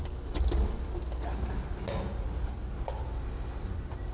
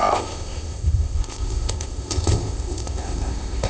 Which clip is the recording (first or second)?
first